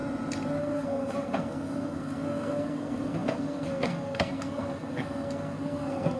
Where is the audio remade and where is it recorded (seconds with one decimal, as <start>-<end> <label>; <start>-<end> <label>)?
0.0-0.6 recorded; 0.6-6.2 remade